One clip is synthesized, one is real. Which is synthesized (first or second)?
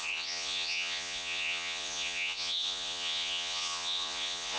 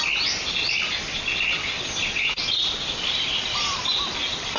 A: first